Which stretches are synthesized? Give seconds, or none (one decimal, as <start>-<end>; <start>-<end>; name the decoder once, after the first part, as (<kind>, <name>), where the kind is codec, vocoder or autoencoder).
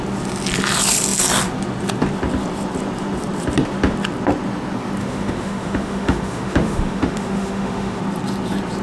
5.0-8.0 (autoencoder, DAC-VAE)